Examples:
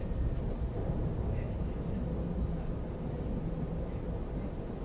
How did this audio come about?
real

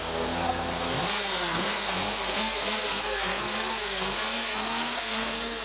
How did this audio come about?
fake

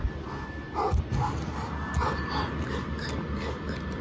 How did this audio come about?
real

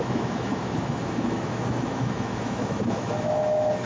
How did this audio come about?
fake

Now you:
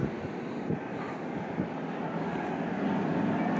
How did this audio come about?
real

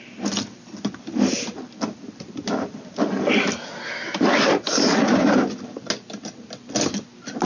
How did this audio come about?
real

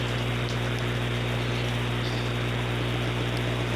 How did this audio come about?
fake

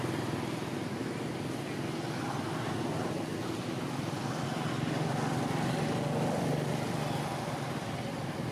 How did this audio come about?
real